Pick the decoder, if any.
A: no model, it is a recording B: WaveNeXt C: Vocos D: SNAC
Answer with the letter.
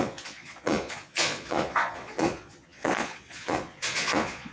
C